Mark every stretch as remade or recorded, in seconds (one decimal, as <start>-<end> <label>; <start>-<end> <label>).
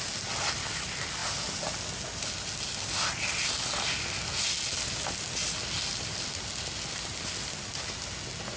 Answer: 0.0-8.6 recorded